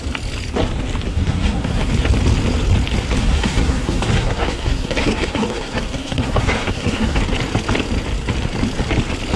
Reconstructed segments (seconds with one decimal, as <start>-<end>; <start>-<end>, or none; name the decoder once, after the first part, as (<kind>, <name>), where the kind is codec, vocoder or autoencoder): 1.1-1.9 (codec, SNAC); 3.2-7.2